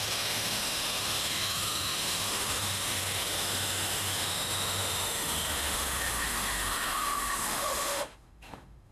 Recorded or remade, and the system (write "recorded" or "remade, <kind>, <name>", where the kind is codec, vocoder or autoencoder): remade, autoencoder, DAC-VAE